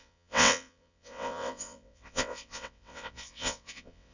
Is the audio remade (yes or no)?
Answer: yes